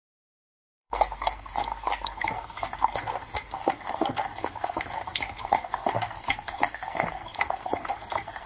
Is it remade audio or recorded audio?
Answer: remade